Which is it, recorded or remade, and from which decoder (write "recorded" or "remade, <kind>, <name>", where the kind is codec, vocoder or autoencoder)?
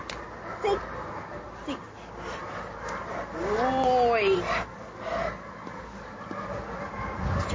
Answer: recorded